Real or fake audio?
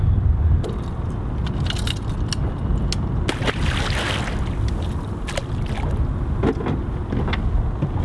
real